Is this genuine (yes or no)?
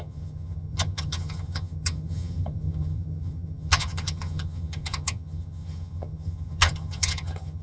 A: no